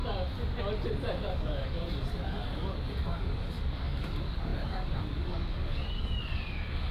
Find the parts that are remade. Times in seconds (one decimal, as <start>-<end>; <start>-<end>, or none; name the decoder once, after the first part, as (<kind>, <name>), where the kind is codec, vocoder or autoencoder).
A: 1.1-6.9 (codec, DAC)